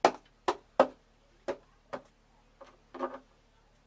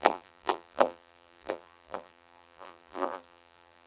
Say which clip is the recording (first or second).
first